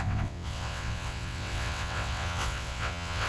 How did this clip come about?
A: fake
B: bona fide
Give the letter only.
A